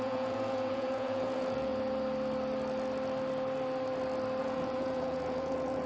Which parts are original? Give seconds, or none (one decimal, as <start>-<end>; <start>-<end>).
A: 1.7-4.4